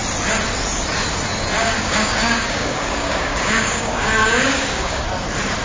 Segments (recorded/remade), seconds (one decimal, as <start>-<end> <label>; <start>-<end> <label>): 0.0-1.6 recorded; 1.6-5.0 remade; 5.0-5.6 recorded